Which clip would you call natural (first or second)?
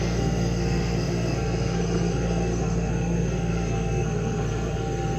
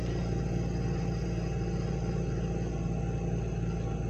second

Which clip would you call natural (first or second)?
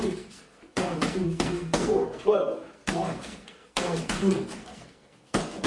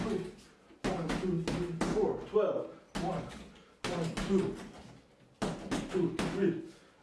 second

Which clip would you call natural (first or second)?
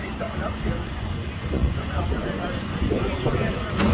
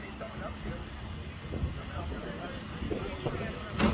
second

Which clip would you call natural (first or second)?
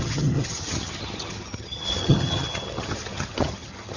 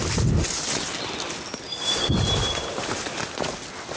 second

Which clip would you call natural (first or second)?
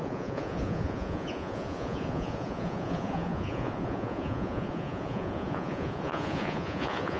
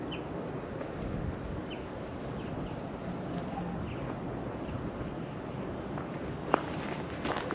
second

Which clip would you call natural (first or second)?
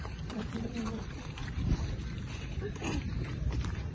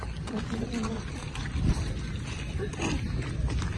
second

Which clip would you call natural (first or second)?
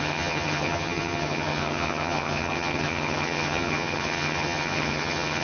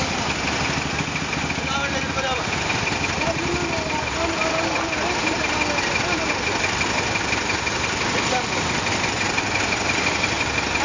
second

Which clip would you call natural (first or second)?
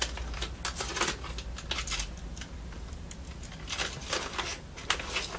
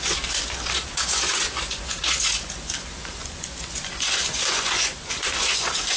first